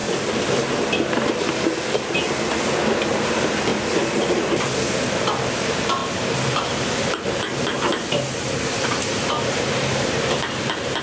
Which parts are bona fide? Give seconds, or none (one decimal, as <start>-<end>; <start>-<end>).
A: 0.0-3.3; 3.7-5.1